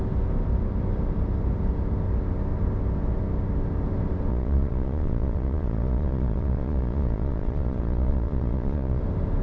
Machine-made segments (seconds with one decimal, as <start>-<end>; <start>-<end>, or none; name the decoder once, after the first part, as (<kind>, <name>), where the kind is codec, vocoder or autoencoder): 4.3-9.0 (vocoder, Vocos)